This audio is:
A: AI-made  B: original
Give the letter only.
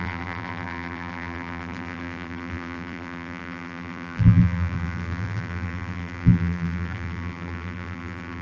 A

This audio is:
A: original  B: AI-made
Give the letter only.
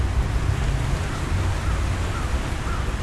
A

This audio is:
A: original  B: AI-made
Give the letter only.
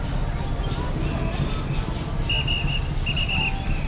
A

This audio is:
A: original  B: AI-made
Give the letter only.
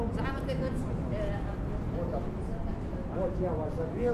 A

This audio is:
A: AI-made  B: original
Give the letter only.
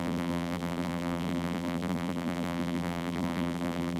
A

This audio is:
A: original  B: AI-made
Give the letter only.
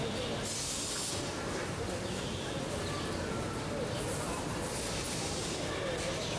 A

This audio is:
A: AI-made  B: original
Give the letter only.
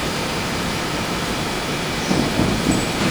A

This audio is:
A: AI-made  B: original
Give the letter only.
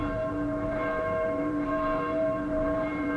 A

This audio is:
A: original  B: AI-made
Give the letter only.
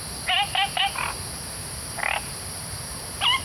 A